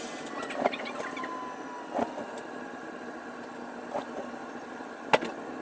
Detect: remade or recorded recorded